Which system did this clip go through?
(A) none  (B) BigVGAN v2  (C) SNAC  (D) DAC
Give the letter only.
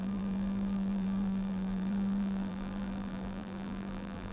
B